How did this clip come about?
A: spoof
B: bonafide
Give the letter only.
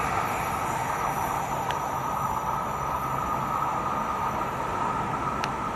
B